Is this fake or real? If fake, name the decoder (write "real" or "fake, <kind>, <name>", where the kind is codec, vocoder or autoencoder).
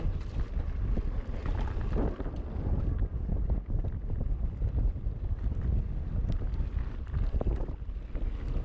real